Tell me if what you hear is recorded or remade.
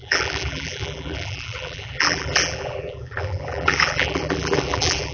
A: remade